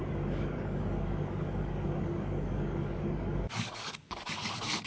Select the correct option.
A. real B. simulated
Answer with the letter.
B